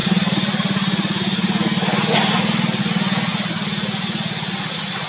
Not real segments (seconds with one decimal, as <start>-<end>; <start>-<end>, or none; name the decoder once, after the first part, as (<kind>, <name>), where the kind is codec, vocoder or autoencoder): none